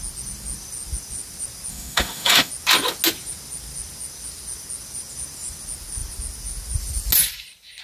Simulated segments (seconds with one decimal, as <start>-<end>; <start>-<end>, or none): 1.7-2.5